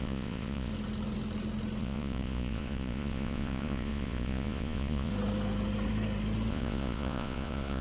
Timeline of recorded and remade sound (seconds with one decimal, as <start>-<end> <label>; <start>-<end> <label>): 0.0-0.7 remade; 0.7-1.8 recorded; 1.8-5.1 remade; 5.1-6.5 recorded; 6.5-7.8 remade